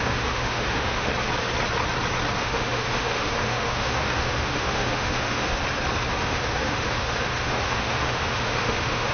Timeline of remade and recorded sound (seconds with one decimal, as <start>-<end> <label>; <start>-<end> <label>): 0.0-1.1 remade; 1.1-2.4 recorded; 2.4-5.6 remade; 5.6-6.2 recorded; 6.2-9.1 remade